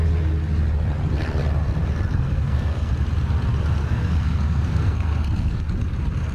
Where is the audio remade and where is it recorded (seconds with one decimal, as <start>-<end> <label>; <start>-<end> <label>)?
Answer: 0.0-2.1 recorded; 2.1-2.9 remade; 2.9-3.8 recorded; 3.8-5.6 remade; 5.6-6.3 recorded